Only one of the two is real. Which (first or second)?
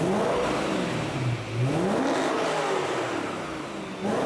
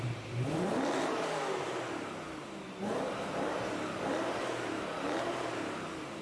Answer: first